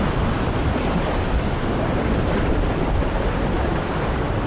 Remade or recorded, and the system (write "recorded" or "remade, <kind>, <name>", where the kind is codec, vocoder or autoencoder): remade, vocoder, BigVGAN v2